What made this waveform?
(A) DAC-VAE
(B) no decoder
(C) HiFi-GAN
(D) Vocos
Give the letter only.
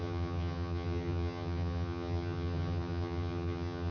C